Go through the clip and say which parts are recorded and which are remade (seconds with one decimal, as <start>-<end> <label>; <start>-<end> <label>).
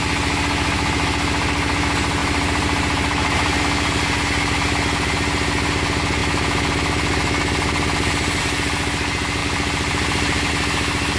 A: 0.0-2.2 recorded; 2.2-3.6 remade; 3.6-9.4 recorded; 9.4-10.5 remade; 10.5-11.2 recorded